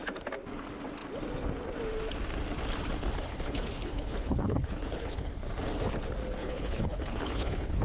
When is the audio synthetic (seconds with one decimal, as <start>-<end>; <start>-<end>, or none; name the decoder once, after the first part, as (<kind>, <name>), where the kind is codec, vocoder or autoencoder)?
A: 3.3-5.3 (codec, HILCodec); 6.4-7.8

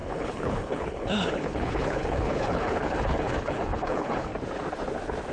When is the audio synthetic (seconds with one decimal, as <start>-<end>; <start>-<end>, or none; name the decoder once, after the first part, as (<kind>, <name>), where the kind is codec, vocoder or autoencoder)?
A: 0.0-4.3 (codec, HILCodec)

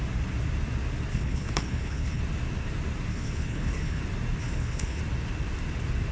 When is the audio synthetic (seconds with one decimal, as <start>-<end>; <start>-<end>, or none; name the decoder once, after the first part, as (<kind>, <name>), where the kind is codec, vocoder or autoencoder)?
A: 1.1-2.2 (codec, HILCodec); 3.1-4.0; 4.4-5.0

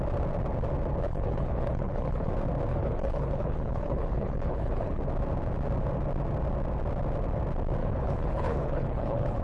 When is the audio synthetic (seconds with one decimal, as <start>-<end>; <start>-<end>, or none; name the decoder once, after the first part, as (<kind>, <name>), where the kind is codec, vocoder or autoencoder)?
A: 1.1-2.3 (codec, HILCodec); 2.7-5.0; 7.8-9.4

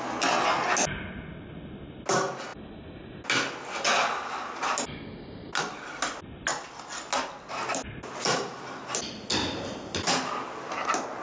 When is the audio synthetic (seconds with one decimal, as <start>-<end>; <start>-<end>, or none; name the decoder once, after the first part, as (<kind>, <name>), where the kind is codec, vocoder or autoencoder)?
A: none

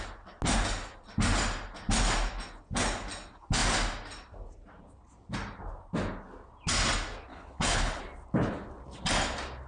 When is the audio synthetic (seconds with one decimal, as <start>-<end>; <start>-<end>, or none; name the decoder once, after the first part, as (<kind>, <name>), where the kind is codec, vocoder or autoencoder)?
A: 7.3-8.0 (codec, HILCodec)

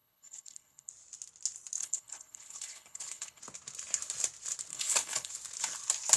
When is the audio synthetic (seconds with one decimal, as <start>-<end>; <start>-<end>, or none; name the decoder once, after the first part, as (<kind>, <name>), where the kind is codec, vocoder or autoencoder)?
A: 0.0-0.9 (codec, HILCodec); 1.8-3.4; 4.7-5.3

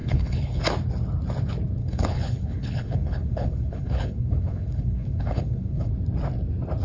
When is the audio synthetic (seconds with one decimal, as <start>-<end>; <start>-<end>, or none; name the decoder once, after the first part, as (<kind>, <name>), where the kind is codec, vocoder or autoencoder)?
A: 0.0-0.6 (codec, HILCodec); 1.8-5.9